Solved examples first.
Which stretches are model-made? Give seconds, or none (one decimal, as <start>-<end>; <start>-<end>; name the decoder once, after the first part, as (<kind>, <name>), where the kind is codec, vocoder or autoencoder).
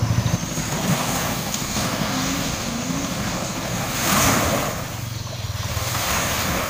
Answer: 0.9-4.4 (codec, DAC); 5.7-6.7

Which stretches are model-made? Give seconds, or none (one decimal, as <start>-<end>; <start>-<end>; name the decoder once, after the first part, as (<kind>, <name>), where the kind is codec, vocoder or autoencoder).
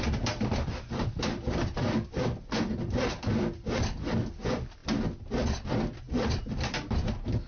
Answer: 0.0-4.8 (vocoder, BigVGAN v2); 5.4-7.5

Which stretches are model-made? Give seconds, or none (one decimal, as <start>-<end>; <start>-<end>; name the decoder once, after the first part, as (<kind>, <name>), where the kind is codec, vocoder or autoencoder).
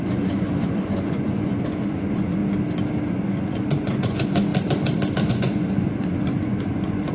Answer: 0.0-2.4 (vocoder, Vocos); 3.1-4.5; 5.3-7.1